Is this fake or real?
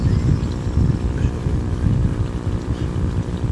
real